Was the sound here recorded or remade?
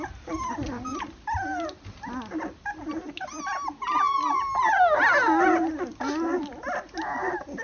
recorded